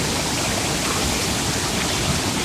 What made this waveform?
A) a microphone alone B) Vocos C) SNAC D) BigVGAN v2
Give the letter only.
A